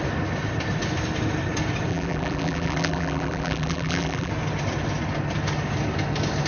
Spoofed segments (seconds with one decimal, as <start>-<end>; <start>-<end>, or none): 1.9-4.3